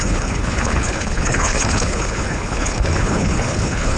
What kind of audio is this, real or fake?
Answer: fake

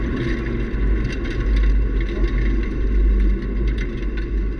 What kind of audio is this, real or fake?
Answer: real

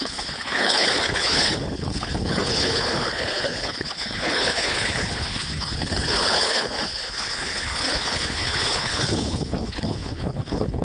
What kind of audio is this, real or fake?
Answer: fake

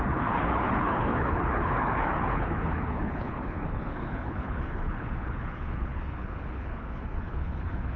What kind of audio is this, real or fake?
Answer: fake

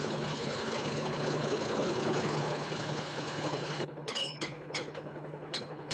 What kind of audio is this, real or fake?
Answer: fake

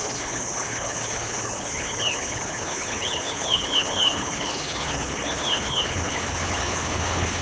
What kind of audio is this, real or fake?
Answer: fake